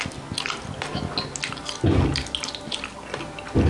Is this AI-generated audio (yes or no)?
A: no